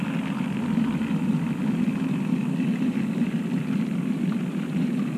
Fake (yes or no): yes